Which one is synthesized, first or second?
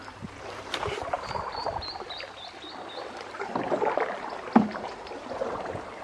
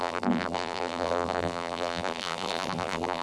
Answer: second